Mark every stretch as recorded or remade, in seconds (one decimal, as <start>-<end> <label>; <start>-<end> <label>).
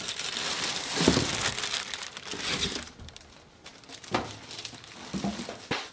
0.0-5.9 recorded